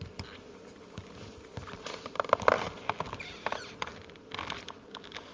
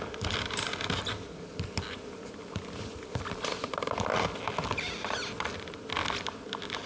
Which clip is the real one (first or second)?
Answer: second